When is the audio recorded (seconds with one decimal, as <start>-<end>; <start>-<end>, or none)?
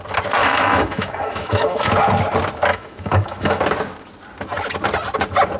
0.0-0.4; 1.9-2.7; 3.6-5.6